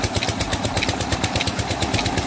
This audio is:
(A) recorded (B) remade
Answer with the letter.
A